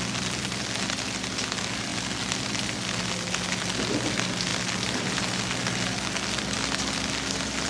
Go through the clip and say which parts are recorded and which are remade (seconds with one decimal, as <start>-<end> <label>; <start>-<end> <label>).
0.0-4.5 recorded; 4.5-5.2 remade; 5.2-7.7 recorded

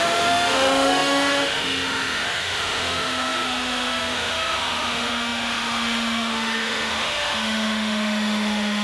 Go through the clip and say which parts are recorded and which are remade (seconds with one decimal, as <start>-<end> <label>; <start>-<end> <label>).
0.0-8.8 remade